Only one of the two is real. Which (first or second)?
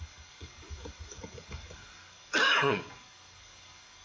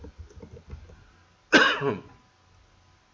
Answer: second